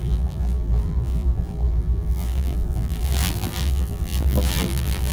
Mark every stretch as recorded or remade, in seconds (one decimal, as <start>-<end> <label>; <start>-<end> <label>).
0.0-5.1 remade